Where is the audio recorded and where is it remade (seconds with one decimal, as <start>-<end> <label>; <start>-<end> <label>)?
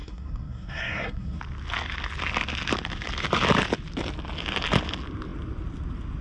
0.0-1.4 remade; 1.4-6.2 recorded